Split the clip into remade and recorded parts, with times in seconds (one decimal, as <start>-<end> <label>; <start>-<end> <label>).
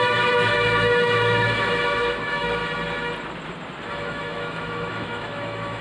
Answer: 0.0-2.6 remade; 2.6-3.9 recorded; 3.9-5.8 remade